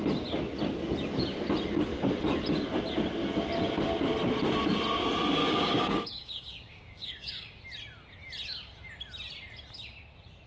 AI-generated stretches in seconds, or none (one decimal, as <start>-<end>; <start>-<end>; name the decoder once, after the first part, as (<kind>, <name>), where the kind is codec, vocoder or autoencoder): 5.4-7.6 (codec, DAC)